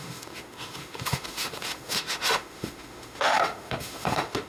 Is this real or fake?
fake